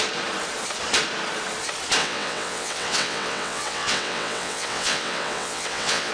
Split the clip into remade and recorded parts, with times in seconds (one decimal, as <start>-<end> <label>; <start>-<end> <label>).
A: 0.0-2.0 recorded; 2.0-6.1 remade